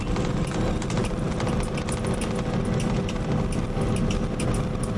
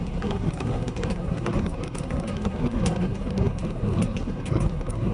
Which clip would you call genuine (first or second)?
first